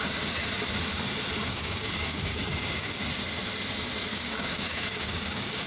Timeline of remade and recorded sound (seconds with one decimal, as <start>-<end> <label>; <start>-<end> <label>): 0.0-1.5 recorded; 1.5-3.0 remade; 3.0-4.1 recorded; 4.1-5.7 remade